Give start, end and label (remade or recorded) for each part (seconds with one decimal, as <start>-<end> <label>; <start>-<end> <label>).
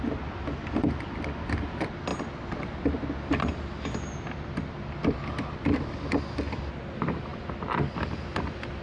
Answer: 0.0-8.8 recorded